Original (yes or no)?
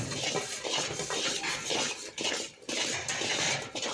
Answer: yes